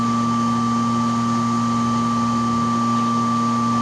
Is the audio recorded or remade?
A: recorded